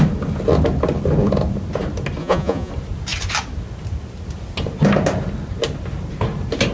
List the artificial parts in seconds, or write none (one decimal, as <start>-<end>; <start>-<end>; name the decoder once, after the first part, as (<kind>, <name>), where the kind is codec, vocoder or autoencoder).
2.2-2.7 (vocoder, Vocos)